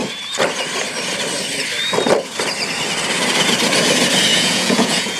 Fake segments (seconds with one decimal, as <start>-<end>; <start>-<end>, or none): 4.3-5.2